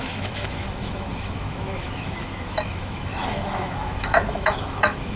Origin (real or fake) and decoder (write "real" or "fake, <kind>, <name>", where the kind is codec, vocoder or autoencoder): fake, autoencoder, DAC-VAE